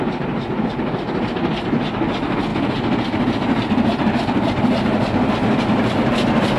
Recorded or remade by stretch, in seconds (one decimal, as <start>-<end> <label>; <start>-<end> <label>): 0.0-2.5 recorded; 2.5-5.6 remade; 5.6-6.6 recorded